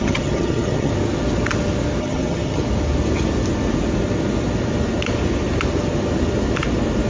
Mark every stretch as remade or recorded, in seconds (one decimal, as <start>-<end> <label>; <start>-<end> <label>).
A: 0.0-0.9 remade; 0.9-2.0 recorded; 2.0-2.6 remade; 2.6-7.1 recorded